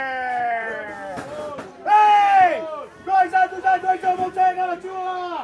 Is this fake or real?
real